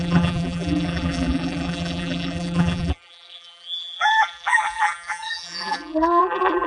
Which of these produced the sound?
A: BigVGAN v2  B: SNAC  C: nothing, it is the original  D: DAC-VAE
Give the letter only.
A